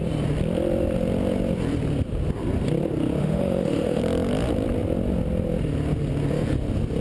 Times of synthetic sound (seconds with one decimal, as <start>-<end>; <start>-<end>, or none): 3.2-4.0

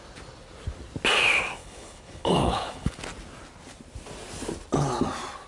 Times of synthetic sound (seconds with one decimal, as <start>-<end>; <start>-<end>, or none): 1.6-3.0

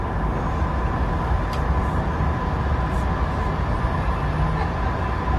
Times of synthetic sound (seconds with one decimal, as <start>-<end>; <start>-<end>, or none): none

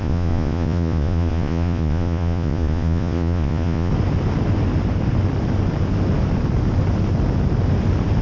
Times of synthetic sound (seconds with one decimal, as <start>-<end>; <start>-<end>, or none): 0.0-3.9

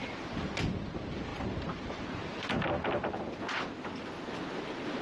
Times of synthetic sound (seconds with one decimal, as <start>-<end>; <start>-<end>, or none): 0.0-0.5

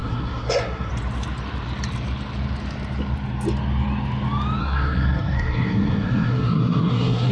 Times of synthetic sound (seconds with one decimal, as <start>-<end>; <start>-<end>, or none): 0.0-0.9; 4.6-7.3

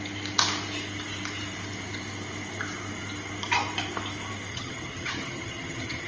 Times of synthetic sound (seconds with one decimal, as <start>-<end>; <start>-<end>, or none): 4.5-6.1

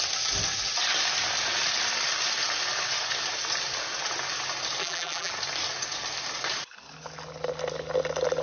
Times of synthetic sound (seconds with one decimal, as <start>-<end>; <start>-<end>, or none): 4.8-5.3